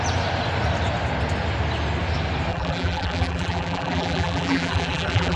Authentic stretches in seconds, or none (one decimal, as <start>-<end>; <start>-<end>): 0.0-2.5